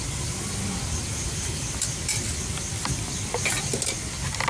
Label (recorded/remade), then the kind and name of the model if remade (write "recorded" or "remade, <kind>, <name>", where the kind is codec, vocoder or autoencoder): recorded